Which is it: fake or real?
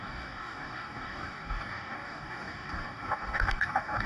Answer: fake